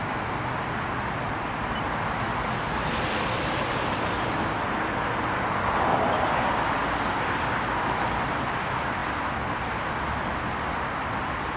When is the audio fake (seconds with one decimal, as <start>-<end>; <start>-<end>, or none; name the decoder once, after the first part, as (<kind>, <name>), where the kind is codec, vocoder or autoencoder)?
none